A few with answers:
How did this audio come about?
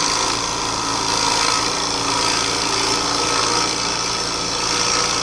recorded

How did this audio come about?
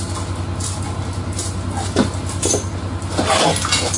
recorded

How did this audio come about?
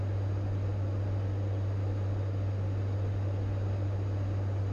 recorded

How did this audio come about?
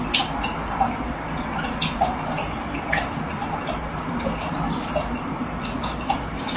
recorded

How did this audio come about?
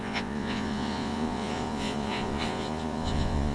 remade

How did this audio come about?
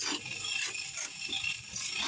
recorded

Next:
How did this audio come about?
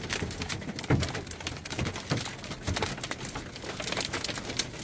recorded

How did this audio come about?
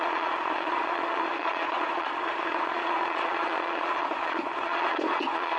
remade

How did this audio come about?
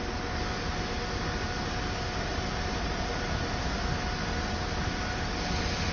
recorded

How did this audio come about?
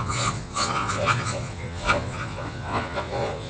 remade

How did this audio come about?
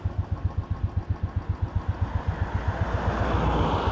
recorded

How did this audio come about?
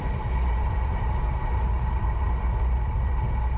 recorded